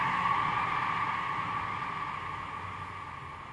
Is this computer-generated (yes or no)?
no